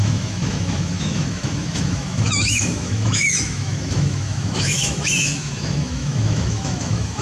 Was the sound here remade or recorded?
remade